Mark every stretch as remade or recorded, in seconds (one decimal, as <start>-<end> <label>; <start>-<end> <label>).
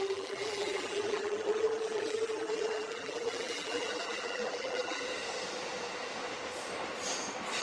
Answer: 0.0-5.0 remade; 5.0-7.6 recorded